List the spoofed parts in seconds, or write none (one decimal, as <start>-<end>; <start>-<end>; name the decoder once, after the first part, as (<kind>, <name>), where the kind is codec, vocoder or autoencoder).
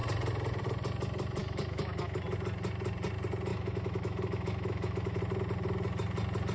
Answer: 1.4-2.2 (autoencoder, DAC-VAE); 3.5-5.2